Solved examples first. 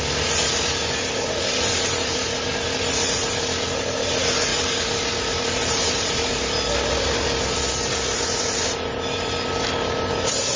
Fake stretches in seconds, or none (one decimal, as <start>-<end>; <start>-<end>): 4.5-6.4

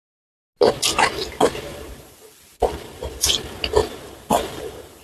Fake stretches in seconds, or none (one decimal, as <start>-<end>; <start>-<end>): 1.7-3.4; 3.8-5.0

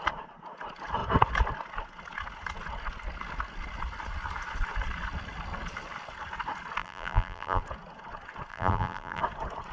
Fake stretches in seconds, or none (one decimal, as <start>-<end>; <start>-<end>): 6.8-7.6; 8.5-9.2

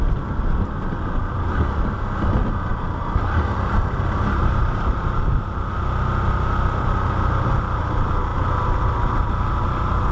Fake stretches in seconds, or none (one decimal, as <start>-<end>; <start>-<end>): 2.7-5.7

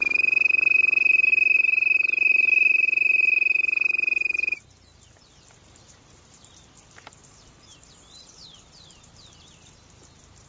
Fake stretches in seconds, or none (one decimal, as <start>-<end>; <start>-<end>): 0.0-1.3; 5.2-10.5

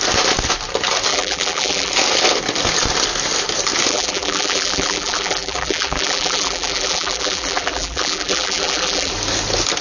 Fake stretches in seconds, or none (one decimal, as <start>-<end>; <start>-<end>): 1.1-1.9; 3.9-9.1